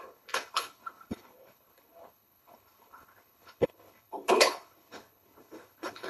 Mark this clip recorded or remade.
remade